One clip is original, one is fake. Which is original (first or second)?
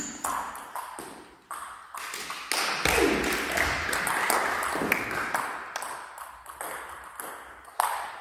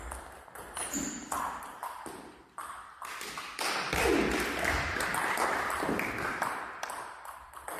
first